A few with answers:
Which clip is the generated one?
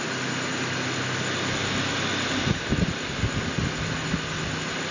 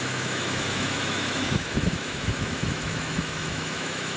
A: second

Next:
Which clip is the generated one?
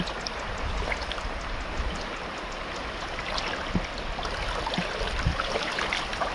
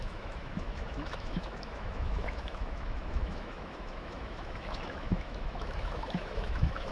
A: second